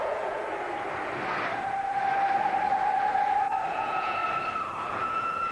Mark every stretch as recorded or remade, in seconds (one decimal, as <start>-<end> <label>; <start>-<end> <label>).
0.0-0.4 remade; 0.4-3.7 recorded; 3.7-4.2 remade; 4.2-4.8 recorded; 4.8-5.5 remade